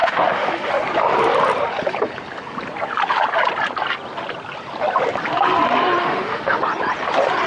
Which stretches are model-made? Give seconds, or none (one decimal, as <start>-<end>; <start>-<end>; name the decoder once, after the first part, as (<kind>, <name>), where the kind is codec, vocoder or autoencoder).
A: 0.0-0.7 (autoencoder, DAC-VAE); 6.0-6.6